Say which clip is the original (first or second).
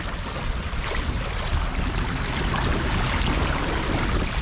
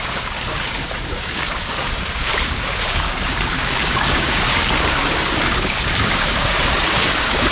first